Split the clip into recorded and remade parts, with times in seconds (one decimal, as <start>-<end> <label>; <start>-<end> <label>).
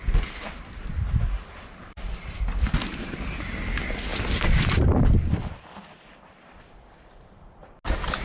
0.0-4.1 recorded; 4.1-7.6 remade; 7.6-8.2 recorded